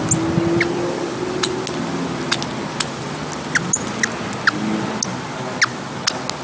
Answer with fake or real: real